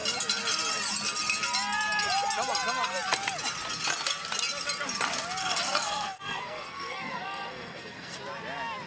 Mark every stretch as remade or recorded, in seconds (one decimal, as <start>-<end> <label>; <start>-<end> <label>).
0.0-5.4 recorded; 5.4-8.2 remade; 8.2-8.9 recorded